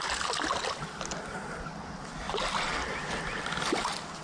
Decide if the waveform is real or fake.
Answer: real